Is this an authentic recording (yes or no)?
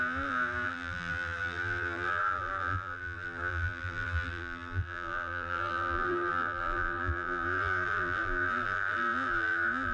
no